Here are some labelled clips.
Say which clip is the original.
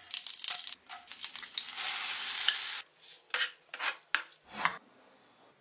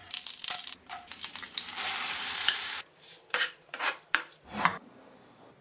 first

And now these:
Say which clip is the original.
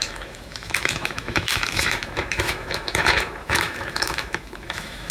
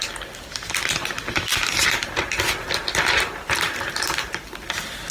second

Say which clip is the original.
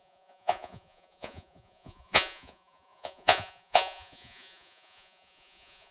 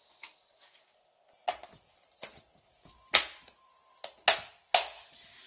second